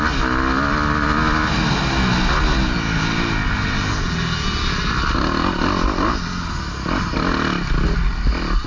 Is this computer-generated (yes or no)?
no